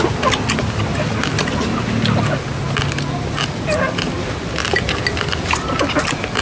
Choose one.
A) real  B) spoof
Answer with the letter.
A